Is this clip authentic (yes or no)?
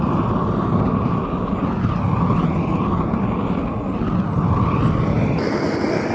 yes